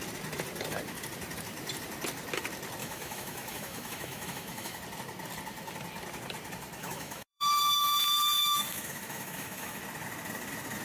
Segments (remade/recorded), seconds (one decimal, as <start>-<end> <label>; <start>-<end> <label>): 0.0-2.8 recorded; 2.8-4.8 remade; 4.8-6.8 recorded; 6.8-8.0 remade; 8.0-8.4 recorded; 8.4-9.8 remade; 9.8-10.8 recorded